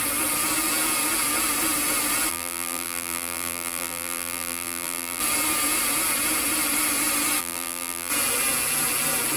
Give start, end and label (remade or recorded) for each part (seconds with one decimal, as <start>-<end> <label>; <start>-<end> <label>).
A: 0.0-2.3 recorded; 2.3-5.2 remade; 5.2-7.4 recorded; 7.4-8.1 remade; 8.1-9.4 recorded